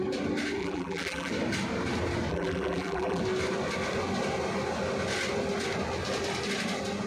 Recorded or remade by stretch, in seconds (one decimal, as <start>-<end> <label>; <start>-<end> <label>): 0.0-0.6 recorded; 0.6-1.3 remade; 1.3-2.3 recorded; 2.3-3.2 remade; 3.2-7.1 recorded